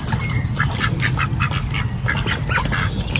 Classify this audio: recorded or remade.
recorded